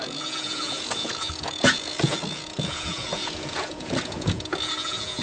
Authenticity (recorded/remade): remade